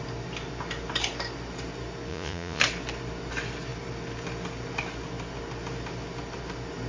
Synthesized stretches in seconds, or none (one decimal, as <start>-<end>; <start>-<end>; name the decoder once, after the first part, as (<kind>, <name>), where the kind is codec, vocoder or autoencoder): 2.1-2.6 (vocoder, Vocos)